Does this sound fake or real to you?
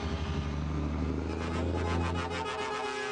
real